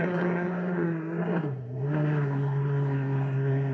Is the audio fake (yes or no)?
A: yes